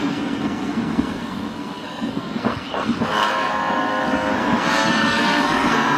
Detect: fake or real fake